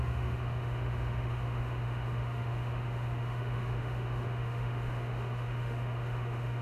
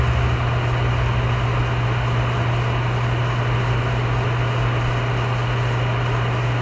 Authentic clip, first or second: second